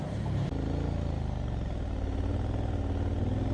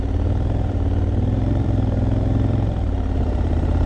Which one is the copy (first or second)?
second